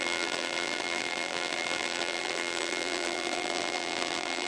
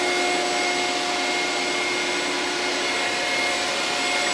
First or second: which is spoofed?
first